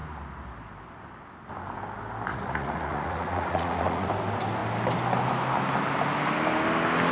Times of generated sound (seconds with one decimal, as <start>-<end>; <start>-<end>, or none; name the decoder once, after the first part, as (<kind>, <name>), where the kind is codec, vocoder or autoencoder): 2.3-4.1 (vocoder, Vocos)